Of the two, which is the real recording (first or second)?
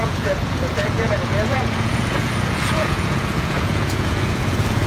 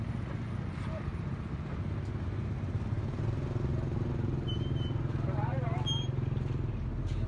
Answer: second